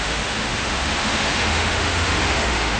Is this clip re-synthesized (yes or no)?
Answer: yes